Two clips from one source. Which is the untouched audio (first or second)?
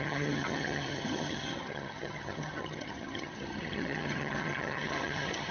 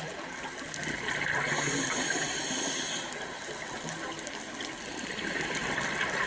second